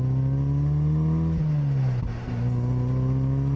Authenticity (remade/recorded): recorded